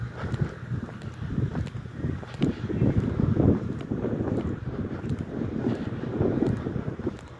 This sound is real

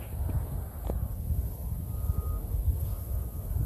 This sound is real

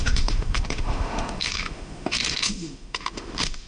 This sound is fake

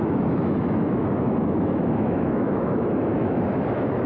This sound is fake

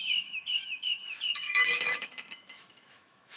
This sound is fake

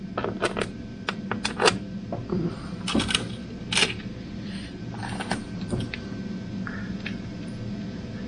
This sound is real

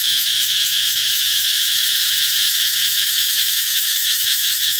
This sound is fake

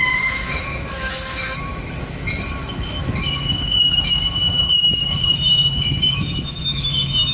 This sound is fake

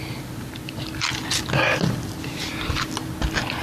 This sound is real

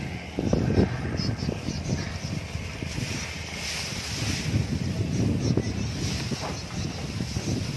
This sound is real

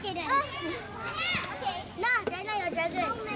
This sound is real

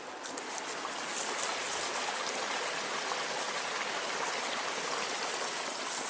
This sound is real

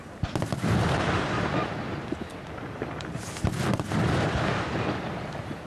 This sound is real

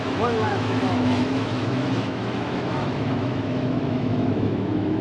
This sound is fake